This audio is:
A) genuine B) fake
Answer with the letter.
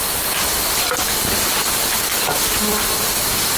A